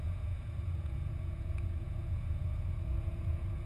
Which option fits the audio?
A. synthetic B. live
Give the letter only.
A